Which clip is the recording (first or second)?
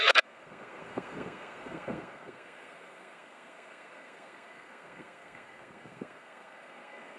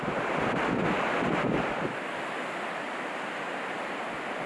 second